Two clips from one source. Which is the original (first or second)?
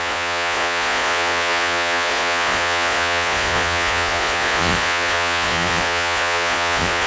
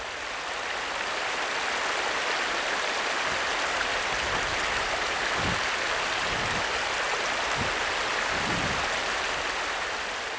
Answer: second